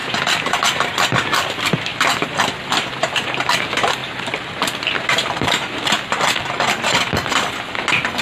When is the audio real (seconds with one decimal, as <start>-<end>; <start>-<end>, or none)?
0.0-4.0; 6.2-8.2